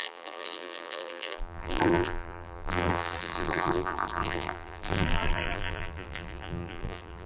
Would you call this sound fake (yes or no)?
yes